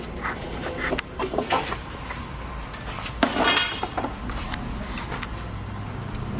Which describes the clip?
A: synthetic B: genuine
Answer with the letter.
B